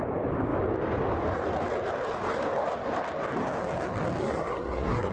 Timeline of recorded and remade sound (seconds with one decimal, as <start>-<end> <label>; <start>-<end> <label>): 0.0-4.2 recorded; 4.2-5.1 remade

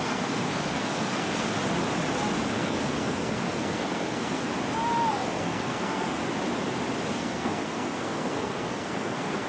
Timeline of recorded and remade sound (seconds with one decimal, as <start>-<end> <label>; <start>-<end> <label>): 0.0-1.6 remade; 1.6-2.5 recorded; 2.5-4.5 remade; 4.5-5.1 recorded; 5.1-6.2 remade; 6.2-7.1 recorded; 7.1-9.5 remade

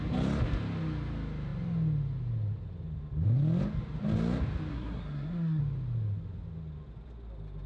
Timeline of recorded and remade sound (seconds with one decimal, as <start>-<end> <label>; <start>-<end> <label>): 0.0-4.7 recorded; 4.7-5.6 remade; 5.6-7.7 recorded